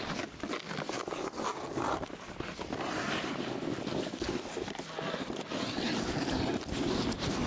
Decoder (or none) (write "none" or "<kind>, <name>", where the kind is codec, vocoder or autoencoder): none